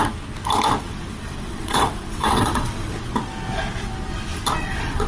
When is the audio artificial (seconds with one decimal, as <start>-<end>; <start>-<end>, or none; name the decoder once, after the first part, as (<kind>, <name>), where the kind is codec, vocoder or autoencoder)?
0.8-3.1 (vocoder, WaveNeXt); 4.6-5.1